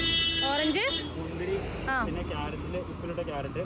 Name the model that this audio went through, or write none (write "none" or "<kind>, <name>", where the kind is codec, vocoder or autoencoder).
none